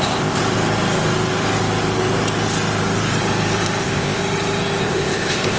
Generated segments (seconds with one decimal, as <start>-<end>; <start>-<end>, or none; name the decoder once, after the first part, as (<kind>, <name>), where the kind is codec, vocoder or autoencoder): 0.0-0.4 (codec, ZipCodec); 3.8-4.2; 4.8-5.6